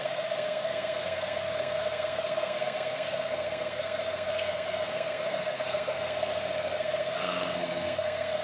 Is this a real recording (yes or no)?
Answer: no